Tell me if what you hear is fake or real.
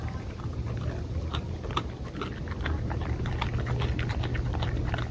real